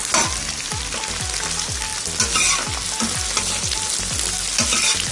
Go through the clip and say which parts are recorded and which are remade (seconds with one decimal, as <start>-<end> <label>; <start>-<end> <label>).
0.0-5.1 recorded